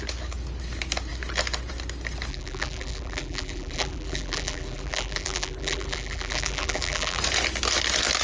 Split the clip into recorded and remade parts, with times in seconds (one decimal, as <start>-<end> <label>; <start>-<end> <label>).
0.0-2.3 recorded; 2.3-7.2 remade; 7.2-8.2 recorded